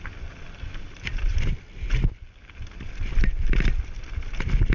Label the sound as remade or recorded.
recorded